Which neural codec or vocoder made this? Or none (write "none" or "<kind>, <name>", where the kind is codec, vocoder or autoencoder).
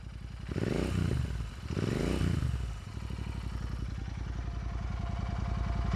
none